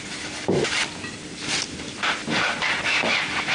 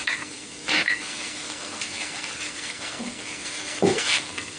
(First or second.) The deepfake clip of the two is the second